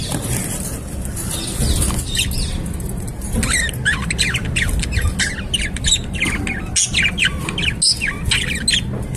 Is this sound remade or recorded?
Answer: recorded